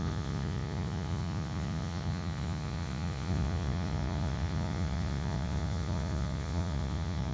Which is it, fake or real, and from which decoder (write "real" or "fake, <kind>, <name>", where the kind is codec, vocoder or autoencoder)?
fake, vocoder, Vocos